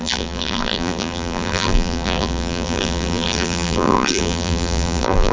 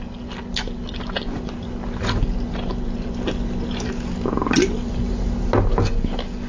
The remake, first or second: first